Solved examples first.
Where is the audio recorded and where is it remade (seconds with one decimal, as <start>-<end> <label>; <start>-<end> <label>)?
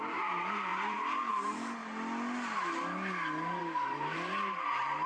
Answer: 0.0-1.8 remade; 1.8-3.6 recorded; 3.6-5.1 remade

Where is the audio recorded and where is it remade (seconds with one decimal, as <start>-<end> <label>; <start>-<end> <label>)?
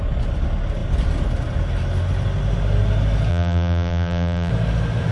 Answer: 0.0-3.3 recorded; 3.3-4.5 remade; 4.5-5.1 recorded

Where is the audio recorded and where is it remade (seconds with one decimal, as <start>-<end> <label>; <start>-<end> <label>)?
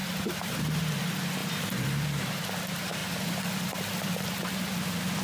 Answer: 0.0-0.8 remade; 0.8-1.4 recorded; 1.4-2.2 remade; 2.2-5.2 recorded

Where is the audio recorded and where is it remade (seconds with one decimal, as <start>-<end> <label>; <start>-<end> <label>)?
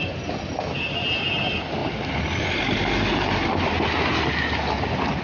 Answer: 0.0-5.2 recorded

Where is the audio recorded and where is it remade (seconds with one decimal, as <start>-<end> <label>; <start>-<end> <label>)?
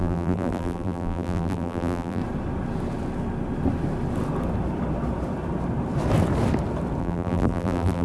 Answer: 0.0-2.2 remade; 2.2-7.0 recorded; 7.0-8.0 remade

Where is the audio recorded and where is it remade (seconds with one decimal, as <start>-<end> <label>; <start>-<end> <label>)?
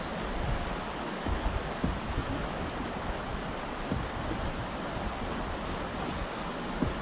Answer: 0.0-2.2 recorded; 2.2-2.8 remade; 2.8-3.3 recorded; 3.3-6.1 remade; 6.1-7.0 recorded